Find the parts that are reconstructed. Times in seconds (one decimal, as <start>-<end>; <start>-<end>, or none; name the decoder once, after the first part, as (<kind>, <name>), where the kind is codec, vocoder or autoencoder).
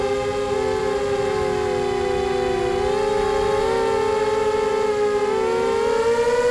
none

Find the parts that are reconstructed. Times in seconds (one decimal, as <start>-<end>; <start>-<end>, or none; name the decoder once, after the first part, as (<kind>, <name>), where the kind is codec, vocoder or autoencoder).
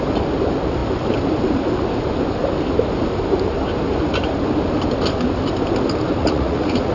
6.2-6.9 (vocoder, Vocos)